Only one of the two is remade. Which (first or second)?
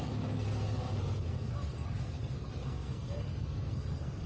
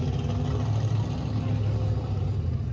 first